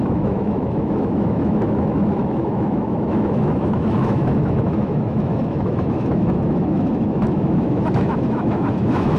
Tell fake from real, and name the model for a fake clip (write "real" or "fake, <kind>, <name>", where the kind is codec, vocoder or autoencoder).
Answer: fake, autoencoder, DAC-VAE